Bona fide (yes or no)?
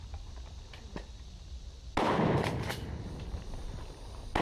yes